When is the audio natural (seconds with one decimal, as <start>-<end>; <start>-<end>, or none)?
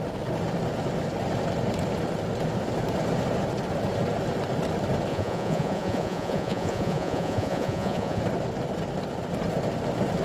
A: 0.0-5.1; 8.2-10.2